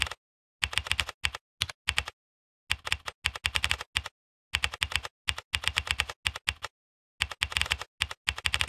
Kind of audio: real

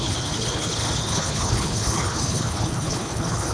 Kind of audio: fake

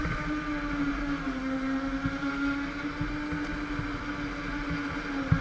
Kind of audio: real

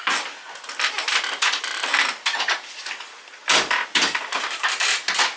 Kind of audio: real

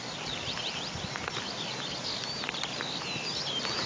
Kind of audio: real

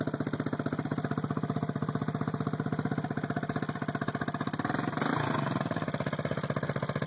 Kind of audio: real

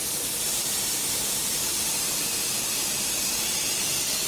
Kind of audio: fake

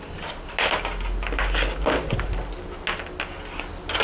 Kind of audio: real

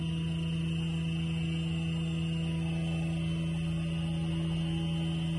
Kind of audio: real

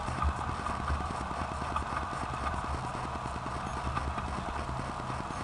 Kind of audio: real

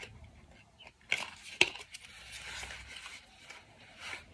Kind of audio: real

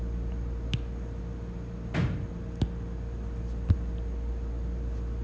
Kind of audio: real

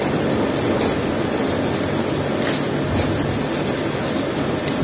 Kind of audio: real